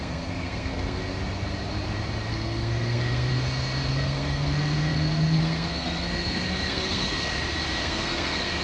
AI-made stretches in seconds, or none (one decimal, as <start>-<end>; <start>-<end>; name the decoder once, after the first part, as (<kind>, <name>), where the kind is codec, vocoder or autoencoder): 0.0-1.0 (codec, SNAC); 2.3-3.3; 3.9-7.3; 7.8-8.6